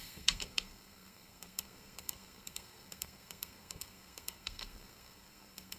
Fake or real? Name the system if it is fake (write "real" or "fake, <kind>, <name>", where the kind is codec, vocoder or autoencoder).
fake, codec, SNAC